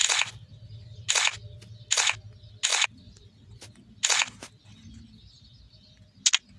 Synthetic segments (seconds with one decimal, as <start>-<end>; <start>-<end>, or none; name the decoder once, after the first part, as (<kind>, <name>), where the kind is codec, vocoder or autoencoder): none